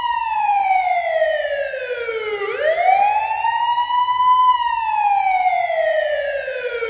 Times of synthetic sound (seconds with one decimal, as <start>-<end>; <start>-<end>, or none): none